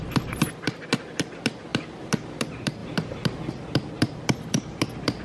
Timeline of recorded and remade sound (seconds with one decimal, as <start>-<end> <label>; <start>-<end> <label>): 0.0-5.2 recorded